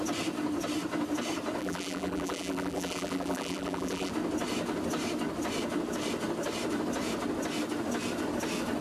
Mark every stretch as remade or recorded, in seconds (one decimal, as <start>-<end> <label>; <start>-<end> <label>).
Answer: 0.0-1.6 recorded; 1.6-4.1 remade; 4.1-8.8 recorded